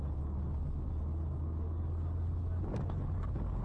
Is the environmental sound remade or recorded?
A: recorded